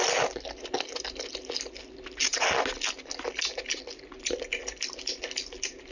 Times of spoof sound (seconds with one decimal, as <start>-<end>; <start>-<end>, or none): none